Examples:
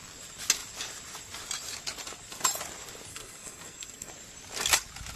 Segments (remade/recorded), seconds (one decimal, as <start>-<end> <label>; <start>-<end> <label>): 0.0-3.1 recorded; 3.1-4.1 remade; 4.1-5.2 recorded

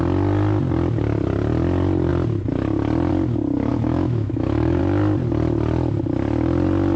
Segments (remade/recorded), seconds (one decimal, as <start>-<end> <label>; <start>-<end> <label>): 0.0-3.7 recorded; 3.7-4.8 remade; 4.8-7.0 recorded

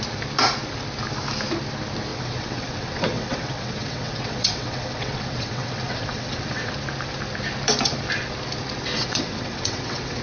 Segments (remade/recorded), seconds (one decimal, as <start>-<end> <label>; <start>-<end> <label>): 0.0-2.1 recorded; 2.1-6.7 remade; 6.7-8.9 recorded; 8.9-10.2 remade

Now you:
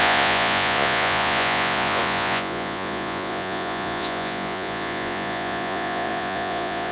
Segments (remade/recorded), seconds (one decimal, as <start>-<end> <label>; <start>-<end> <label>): 0.0-6.9 remade